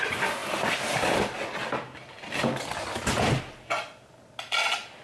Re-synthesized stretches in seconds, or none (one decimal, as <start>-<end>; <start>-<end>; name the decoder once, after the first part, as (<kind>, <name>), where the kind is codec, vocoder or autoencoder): none